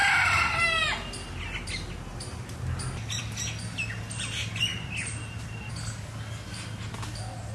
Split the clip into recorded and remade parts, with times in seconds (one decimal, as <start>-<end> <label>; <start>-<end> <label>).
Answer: 0.0-7.5 recorded